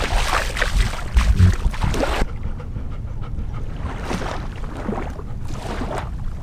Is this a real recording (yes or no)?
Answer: yes